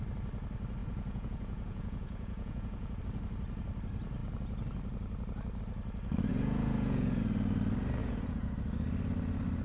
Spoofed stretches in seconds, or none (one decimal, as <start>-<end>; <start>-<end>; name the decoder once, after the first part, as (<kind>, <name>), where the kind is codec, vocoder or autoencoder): 0.8-3.0 (vocoder, Vocos); 6.3-7.2; 8.0-8.5